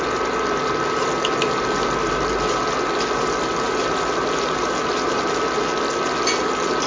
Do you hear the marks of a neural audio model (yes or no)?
no